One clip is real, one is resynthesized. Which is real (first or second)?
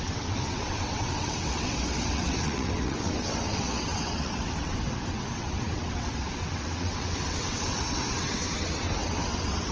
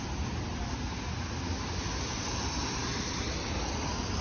second